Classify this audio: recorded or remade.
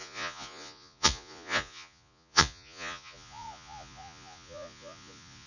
remade